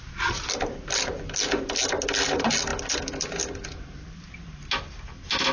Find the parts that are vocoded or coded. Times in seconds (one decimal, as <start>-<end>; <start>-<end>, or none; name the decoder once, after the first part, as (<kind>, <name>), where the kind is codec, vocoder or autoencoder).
none